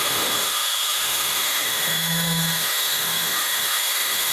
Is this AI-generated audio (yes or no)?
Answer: yes